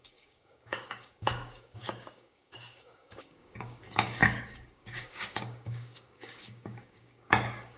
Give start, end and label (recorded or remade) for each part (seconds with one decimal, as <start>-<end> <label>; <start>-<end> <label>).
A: 0.0-7.8 remade